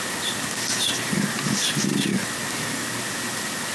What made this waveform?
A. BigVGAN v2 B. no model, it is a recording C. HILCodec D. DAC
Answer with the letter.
B